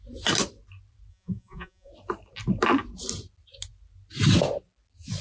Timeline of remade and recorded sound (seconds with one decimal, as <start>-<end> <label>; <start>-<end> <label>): 0.0-1.1 recorded; 1.1-1.9 remade; 1.9-5.2 recorded